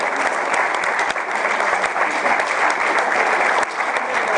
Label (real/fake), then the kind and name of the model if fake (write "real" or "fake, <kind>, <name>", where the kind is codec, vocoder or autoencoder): real